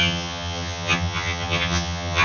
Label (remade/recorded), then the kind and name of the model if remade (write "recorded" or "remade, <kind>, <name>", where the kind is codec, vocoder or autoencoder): remade, vocoder, HiFi-GAN